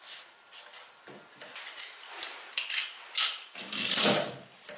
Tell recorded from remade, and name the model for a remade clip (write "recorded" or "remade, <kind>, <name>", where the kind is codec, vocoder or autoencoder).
recorded